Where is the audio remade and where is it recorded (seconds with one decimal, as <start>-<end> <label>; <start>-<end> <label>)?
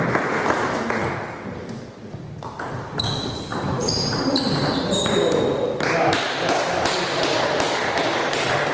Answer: 0.0-3.5 recorded; 3.5-4.4 remade; 4.4-8.7 recorded